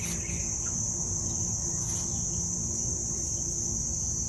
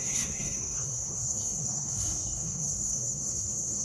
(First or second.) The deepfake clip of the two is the second